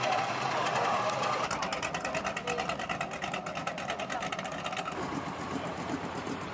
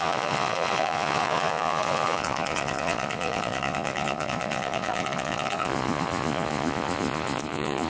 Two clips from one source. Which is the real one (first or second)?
first